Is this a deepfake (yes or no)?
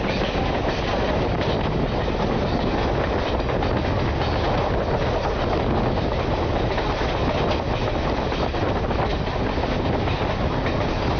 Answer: no